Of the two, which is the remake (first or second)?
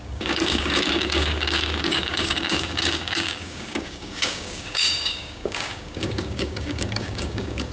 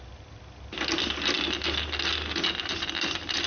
first